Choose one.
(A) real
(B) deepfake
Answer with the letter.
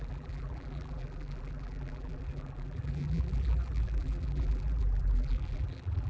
B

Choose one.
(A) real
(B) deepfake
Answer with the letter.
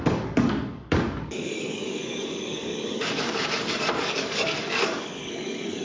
B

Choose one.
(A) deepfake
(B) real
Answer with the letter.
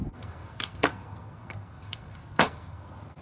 A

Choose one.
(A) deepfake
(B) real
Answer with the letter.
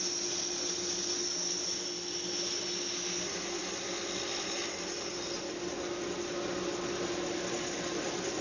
B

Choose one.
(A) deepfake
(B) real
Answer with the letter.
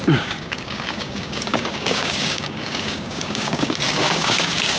A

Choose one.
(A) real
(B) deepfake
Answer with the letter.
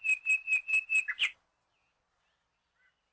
A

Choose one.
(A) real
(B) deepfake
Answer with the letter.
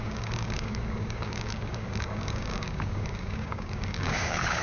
B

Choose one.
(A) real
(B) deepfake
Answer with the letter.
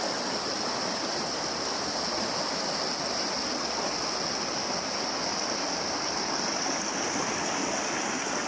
A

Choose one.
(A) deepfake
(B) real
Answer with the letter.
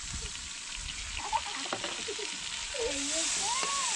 B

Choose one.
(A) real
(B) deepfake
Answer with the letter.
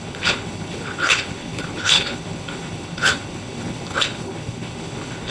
B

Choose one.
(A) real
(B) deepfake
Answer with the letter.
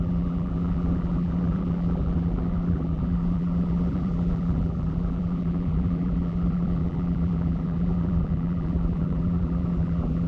B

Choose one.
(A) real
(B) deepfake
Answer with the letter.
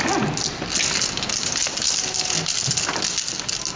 A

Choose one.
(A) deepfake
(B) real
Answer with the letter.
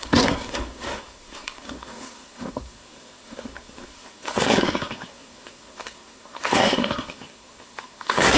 A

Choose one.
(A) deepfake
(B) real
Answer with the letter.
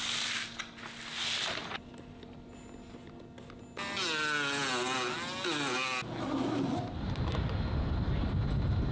B